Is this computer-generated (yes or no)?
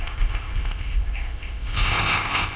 yes